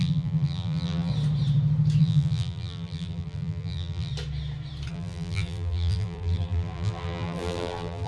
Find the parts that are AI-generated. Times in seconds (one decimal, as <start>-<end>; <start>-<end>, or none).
0.0-1.1; 2.0-4.1; 4.9-8.1

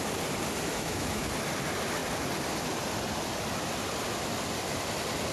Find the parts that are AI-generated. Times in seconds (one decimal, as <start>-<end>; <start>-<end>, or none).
0.7-1.3

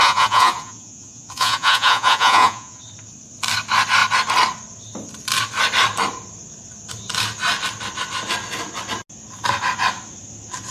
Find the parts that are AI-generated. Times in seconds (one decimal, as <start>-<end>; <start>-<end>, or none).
0.0-2.8

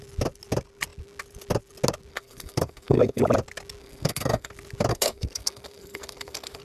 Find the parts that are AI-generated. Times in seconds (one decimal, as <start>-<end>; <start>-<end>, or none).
2.1-3.2; 3.8-4.5; 4.9-6.6

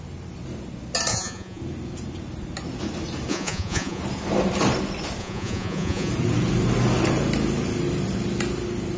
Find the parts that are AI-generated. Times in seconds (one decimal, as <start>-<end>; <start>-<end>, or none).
1.1-1.6; 3.3-4.0; 5.2-6.1

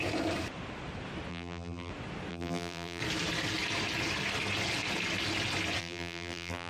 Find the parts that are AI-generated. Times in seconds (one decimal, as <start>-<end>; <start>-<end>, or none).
1.3-1.9; 2.3-3.0; 5.8-6.7